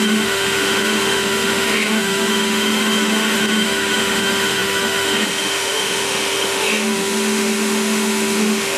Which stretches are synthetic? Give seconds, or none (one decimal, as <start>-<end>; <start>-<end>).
0.0-8.8